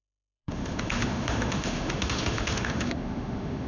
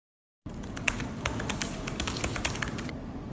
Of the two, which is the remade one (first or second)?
first